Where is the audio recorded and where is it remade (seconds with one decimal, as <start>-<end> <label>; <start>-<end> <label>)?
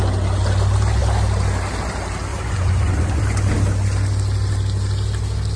0.0-2.3 recorded; 2.3-3.2 remade; 3.2-5.6 recorded